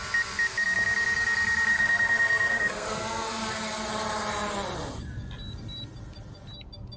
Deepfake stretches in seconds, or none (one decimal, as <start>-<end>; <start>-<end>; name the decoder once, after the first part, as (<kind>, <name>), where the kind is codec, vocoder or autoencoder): 1.7-3.5 (codec, SNAC)